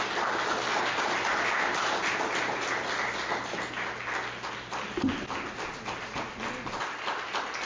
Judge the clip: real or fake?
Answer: real